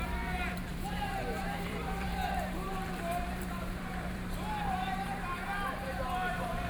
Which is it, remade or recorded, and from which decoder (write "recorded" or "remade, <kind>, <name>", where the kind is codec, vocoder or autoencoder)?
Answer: remade, vocoder, BigVGAN v2